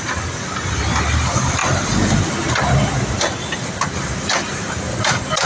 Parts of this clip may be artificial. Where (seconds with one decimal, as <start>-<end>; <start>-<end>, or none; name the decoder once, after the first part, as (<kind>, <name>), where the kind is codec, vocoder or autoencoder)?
none